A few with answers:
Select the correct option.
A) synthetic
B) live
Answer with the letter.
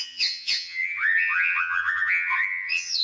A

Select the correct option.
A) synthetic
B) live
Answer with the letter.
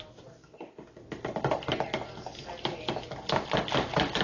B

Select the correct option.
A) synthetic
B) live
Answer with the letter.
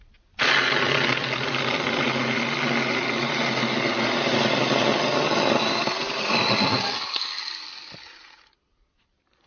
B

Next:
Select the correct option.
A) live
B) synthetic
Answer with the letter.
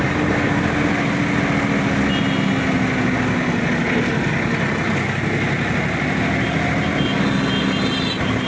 A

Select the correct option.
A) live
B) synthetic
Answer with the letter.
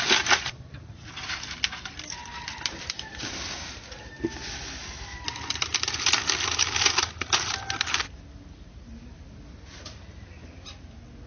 A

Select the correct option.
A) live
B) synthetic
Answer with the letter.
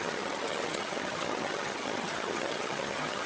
B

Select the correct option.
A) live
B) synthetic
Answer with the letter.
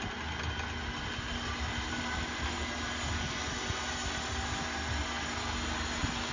A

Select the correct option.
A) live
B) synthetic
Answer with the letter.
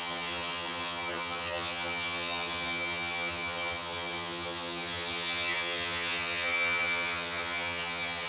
B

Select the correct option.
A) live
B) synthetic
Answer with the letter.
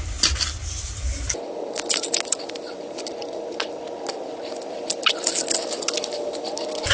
A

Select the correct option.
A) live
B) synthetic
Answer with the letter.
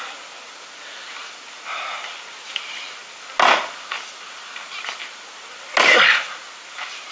A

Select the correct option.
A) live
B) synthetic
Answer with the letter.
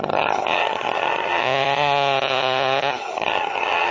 B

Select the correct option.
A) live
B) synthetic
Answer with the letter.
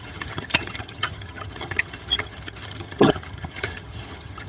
B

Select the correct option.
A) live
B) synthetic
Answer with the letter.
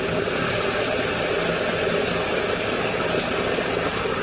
A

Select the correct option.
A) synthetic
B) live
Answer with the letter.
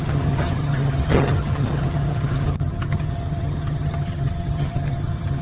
A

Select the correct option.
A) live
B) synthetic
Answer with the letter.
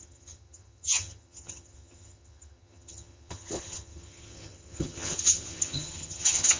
B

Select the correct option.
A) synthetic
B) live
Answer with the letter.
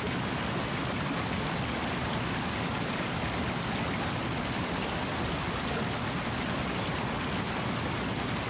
B